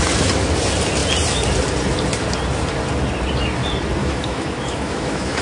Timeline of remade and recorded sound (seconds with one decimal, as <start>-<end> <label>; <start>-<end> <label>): 0.0-4.0 recorded; 4.0-5.4 remade